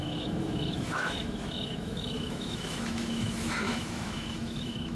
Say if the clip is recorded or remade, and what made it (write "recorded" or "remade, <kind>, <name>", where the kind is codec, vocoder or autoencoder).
remade, autoencoder, DAC-VAE